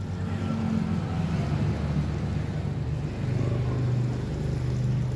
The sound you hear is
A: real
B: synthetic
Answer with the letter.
A